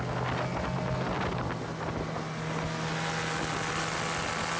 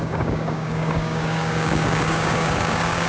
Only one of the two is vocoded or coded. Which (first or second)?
second